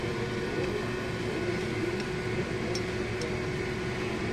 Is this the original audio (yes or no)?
yes